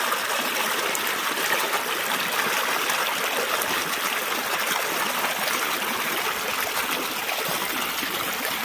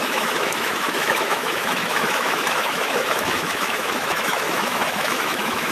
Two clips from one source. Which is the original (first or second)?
first